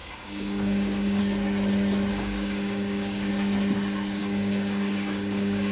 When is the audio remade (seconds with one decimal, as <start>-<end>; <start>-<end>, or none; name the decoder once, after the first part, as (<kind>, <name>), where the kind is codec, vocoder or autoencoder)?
0.0-1.2 (codec, DAC); 2.1-3.3; 4.2-5.7